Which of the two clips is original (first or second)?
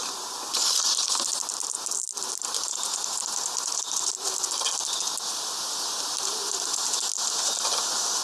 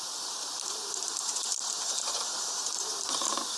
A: first